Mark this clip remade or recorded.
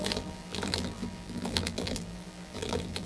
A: remade